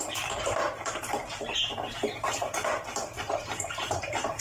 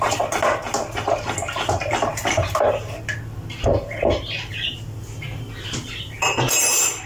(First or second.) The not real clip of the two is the first